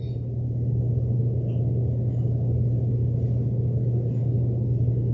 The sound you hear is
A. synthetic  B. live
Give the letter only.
B